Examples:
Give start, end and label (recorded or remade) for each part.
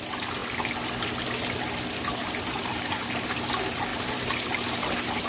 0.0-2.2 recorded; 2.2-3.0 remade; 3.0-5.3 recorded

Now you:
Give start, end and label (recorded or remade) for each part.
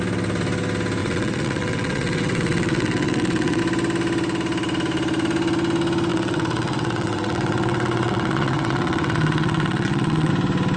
0.0-1.0 recorded; 1.0-3.6 remade; 3.6-6.1 recorded; 6.1-10.3 remade; 10.3-10.8 recorded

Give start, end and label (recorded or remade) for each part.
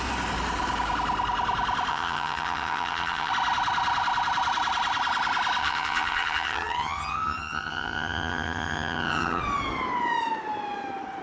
0.0-1.9 recorded; 1.9-3.3 remade; 3.3-5.6 recorded; 5.6-9.4 remade; 9.4-11.2 recorded